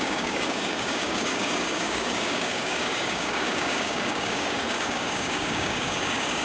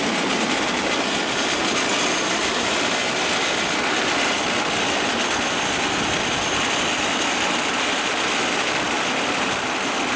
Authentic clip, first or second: second